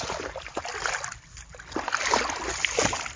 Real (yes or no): yes